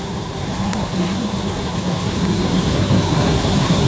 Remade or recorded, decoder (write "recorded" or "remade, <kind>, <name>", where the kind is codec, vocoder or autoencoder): remade, codec, SNAC